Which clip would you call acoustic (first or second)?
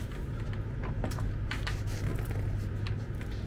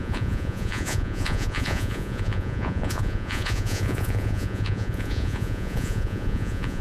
first